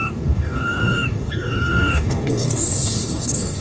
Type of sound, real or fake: fake